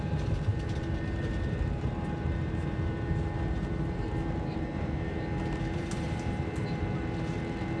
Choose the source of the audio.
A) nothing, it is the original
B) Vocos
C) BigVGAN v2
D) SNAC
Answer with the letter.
C